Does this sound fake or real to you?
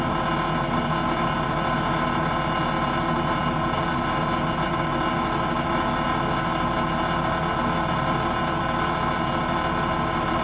real